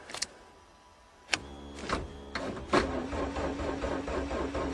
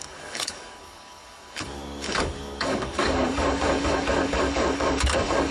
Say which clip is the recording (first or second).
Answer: first